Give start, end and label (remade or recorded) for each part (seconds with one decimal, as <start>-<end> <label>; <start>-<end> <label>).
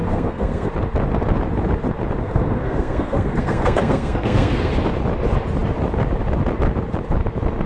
0.0-0.7 remade; 0.7-2.2 recorded; 2.2-4.7 remade; 4.7-7.7 recorded